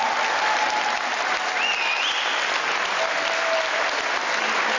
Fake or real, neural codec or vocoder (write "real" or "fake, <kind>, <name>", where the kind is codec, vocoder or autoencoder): real